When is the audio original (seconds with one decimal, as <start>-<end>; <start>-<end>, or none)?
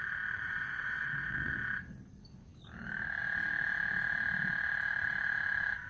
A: 0.0-0.7; 1.5-5.9